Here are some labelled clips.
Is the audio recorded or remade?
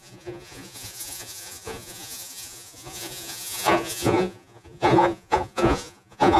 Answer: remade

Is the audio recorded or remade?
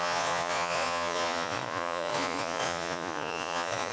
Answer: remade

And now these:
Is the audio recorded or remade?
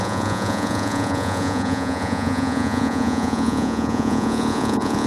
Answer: remade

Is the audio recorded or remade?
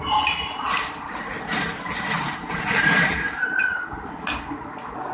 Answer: recorded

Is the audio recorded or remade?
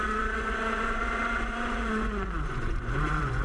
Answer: remade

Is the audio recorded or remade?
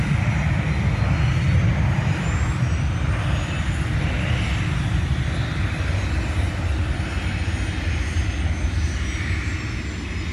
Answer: recorded